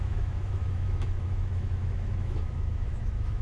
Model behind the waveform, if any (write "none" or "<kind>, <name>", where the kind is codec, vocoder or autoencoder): autoencoder, DAC-VAE